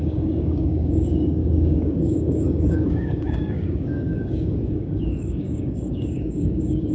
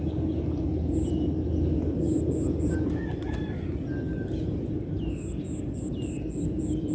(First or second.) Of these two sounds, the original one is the second